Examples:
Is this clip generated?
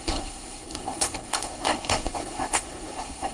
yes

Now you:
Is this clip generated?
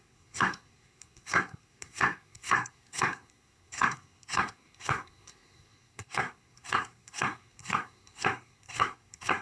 yes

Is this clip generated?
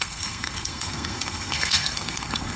yes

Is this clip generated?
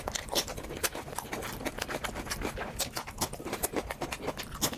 no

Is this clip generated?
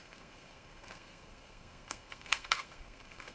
yes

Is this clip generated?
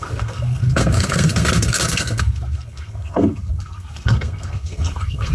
yes